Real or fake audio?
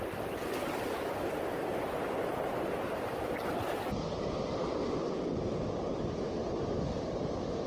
real